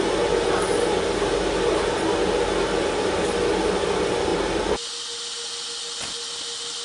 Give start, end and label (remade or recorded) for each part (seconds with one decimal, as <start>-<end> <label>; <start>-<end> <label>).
0.0-6.8 recorded